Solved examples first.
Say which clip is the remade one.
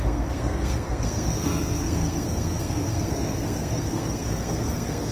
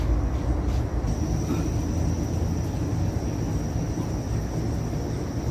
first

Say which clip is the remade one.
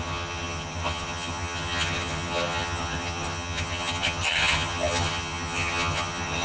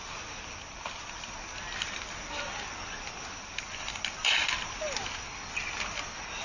first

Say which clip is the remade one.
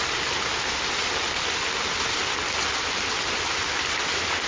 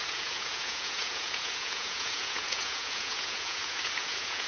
second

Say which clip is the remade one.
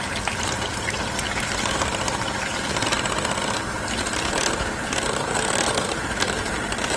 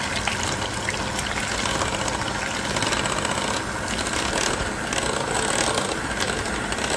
first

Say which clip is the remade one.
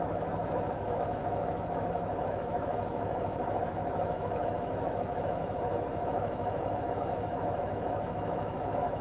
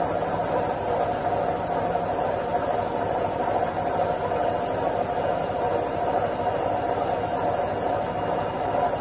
first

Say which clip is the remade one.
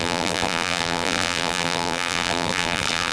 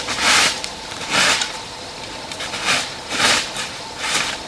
first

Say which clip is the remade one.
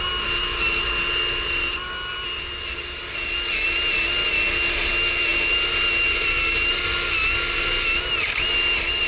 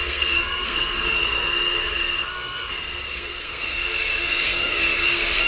second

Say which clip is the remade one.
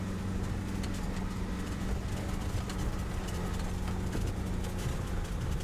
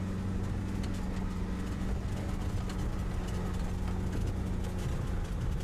first